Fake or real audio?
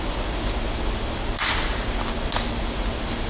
real